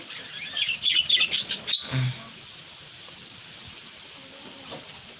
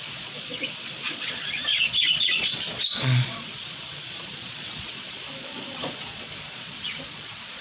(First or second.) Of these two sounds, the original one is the first